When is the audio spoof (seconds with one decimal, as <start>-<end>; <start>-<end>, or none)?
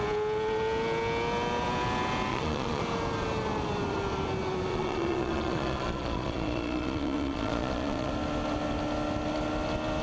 2.3-2.8; 4.7-8.1